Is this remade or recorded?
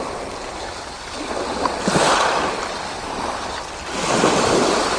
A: recorded